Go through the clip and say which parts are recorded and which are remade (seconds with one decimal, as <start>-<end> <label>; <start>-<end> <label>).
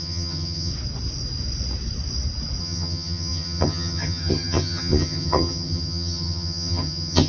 0.0-0.7 remade; 0.7-2.6 recorded; 2.6-7.3 remade